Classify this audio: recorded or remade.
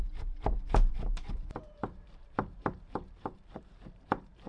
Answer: remade